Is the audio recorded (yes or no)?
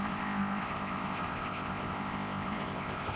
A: no